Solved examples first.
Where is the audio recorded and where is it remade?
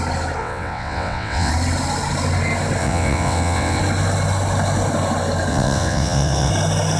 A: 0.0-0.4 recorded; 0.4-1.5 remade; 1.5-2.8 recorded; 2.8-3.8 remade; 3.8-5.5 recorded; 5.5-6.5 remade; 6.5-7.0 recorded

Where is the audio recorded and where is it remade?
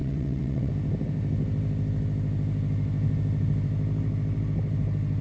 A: 0.0-0.7 remade; 0.7-5.2 recorded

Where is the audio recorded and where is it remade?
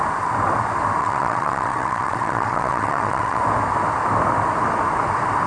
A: 0.0-1.0 recorded; 1.0-3.4 remade; 3.4-5.5 recorded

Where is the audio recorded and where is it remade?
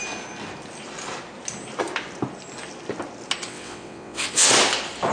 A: 0.0-3.5 recorded; 3.5-4.5 remade; 4.5-5.1 recorded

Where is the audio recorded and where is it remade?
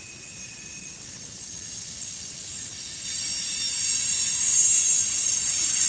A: 0.0-2.7 remade; 2.7-5.4 recorded; 5.4-5.9 remade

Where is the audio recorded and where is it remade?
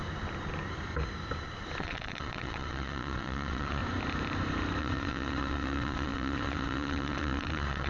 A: 0.0-1.8 recorded; 1.8-3.8 remade; 3.8-4.8 recorded; 4.8-7.9 remade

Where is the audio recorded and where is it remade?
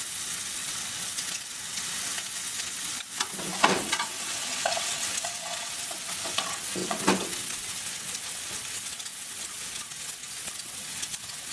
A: 0.0-11.5 remade